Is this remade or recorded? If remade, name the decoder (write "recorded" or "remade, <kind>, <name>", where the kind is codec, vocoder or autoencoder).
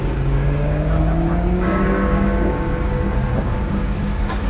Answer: remade, codec, DAC